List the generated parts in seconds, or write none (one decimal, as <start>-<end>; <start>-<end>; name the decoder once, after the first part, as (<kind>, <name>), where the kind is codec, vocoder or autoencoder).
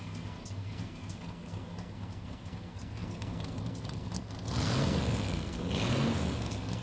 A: 0.0-6.8 (codec, SNAC)